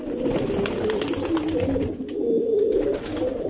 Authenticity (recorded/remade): recorded